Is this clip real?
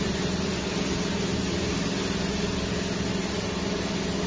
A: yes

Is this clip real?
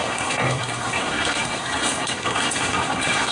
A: no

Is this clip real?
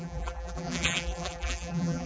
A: no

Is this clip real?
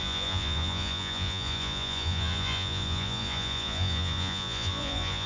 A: no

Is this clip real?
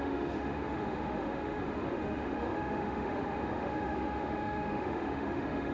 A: no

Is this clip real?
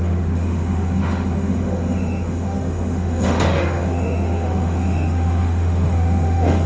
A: no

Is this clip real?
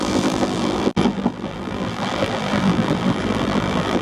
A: no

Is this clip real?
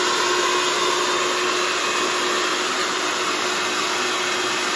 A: yes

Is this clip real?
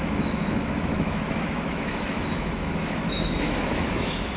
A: no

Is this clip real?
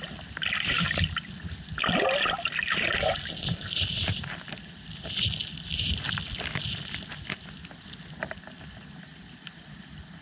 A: yes